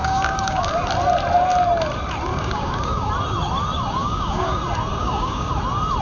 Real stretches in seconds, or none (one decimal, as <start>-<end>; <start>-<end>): 0.7-2.3; 3.1-4.0; 4.6-5.0; 5.5-6.0